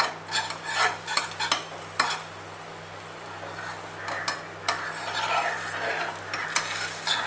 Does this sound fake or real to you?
real